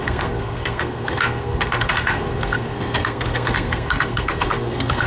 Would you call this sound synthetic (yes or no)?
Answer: yes